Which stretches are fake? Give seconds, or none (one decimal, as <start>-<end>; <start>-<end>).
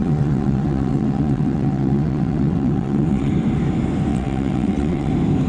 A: 0.0-3.3; 4.1-5.1